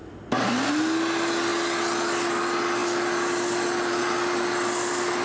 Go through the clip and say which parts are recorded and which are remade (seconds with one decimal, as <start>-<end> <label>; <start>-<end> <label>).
0.0-0.8 remade; 0.8-5.2 recorded